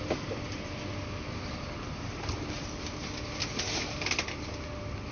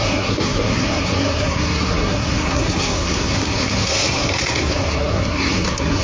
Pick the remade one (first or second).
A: second